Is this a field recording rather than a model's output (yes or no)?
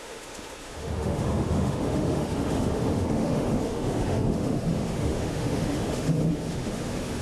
no